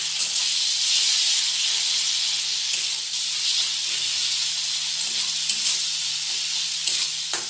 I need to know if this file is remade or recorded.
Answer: recorded